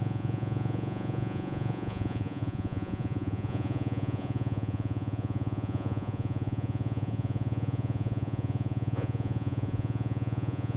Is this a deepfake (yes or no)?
yes